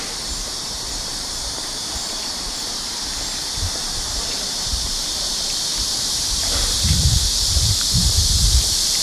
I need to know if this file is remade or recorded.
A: remade